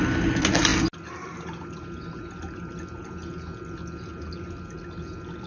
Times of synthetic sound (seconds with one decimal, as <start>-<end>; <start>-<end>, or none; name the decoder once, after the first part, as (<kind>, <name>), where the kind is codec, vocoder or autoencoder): none